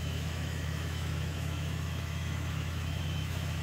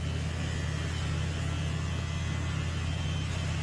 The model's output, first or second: first